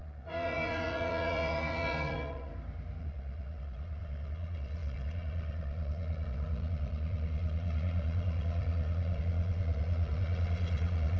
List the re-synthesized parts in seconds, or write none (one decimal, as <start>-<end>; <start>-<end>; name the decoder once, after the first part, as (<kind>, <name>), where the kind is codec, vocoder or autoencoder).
0.0-2.5 (vocoder, Vocos); 3.0-11.2